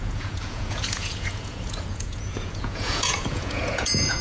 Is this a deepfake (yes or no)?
yes